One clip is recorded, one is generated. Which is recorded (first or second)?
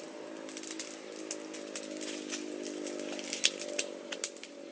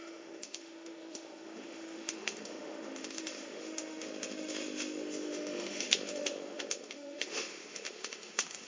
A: first